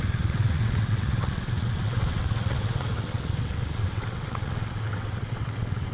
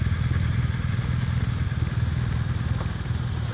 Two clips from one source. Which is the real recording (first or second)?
second